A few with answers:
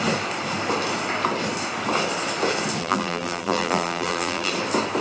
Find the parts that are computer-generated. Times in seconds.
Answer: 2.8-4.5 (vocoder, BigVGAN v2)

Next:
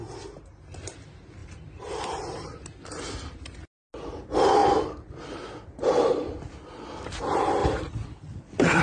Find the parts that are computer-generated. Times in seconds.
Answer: 1.4-3.0 (vocoder, BigVGAN v2); 7.6-8.8

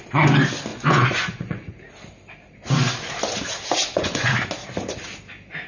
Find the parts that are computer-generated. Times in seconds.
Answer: 0.7-1.7 (vocoder, Vocos); 3.8-4.3